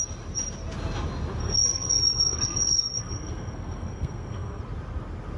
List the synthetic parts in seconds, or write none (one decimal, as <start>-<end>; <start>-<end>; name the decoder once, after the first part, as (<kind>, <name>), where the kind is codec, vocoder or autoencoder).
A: 1.4-4.6 (codec, SNAC)